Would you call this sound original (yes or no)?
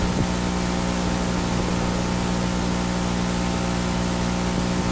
yes